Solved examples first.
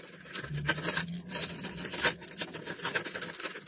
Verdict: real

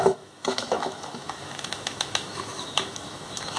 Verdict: fake